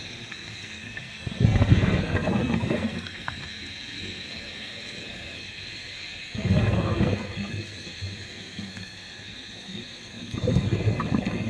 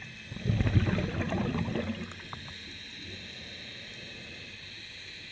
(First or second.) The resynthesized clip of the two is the first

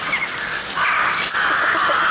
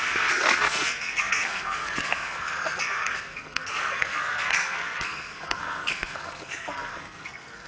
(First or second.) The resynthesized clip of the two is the second